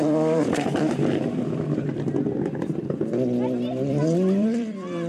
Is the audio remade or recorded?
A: remade